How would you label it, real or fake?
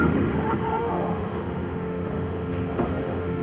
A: fake